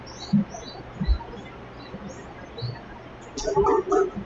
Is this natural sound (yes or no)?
yes